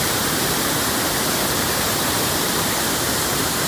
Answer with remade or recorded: recorded